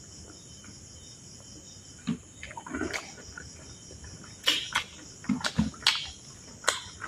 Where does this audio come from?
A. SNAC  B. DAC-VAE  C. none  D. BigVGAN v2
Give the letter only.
C